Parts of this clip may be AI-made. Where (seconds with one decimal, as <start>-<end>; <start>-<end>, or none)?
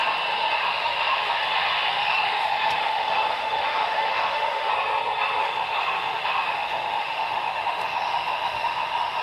0.6-4.7; 5.4-9.2